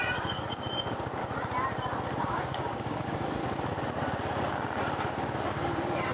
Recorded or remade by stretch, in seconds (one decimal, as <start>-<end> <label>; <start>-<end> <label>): 0.0-1.2 remade; 1.2-2.2 recorded; 2.2-3.4 remade; 3.4-5.1 recorded; 5.1-6.1 remade

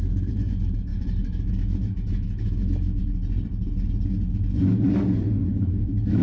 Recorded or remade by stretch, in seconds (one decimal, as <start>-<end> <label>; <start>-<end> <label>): 0.0-3.0 remade; 3.0-5.5 recorded; 5.5-6.2 remade

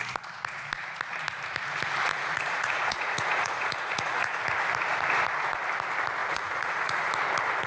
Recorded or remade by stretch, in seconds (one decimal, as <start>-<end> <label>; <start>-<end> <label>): 0.0-2.1 recorded; 2.1-4.4 remade; 4.4-6.2 recorded; 6.2-7.1 remade; 7.1-7.7 recorded

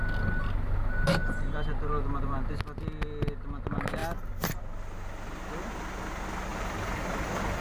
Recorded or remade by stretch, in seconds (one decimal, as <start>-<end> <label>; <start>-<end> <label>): 0.0-1.2 recorded; 1.2-2.6 remade; 2.6-6.5 recorded; 6.5-7.6 remade

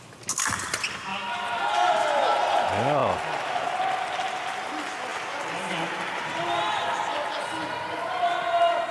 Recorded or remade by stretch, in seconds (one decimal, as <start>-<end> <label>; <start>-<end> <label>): 0.0-5.1 recorded; 5.1-8.1 remade; 8.1-8.9 recorded

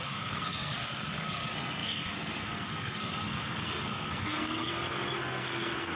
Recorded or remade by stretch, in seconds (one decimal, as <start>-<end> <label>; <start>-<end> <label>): 0.0-6.0 remade

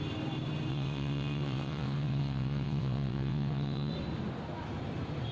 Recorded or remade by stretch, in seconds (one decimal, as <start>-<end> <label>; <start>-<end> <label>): 0.0-0.7 recorded; 0.7-3.9 remade; 3.9-5.3 recorded